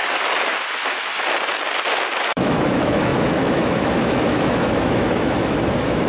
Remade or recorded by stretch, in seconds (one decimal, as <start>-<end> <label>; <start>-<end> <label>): 0.0-2.3 recorded; 2.3-6.1 remade